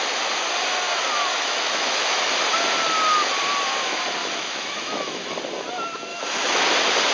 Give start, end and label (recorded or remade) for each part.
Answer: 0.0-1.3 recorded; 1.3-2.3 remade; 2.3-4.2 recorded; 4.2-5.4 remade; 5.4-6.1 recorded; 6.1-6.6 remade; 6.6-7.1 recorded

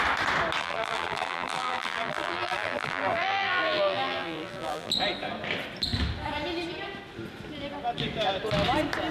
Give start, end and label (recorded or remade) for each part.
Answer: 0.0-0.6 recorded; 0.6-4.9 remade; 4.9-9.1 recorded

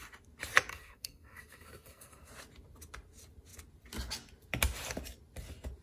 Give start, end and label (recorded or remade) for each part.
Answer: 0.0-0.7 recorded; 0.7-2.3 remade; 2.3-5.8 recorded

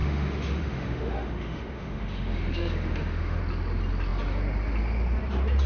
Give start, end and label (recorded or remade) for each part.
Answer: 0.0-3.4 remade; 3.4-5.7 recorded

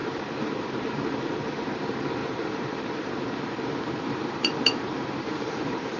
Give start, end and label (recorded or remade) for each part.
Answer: 0.0-1.8 remade; 1.8-2.2 recorded; 2.2-6.0 remade

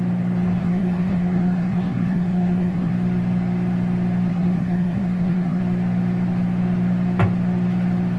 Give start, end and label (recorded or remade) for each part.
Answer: 0.0-0.6 recorded; 0.6-2.9 remade; 2.9-4.3 recorded; 4.3-5.6 remade; 5.6-8.2 recorded

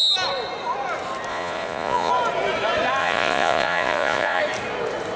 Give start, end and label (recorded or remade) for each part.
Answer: 0.0-1.3 recorded; 1.3-2.1 remade; 2.1-3.0 recorded; 3.0-4.4 remade; 4.4-5.2 recorded